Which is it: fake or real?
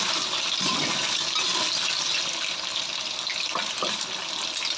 real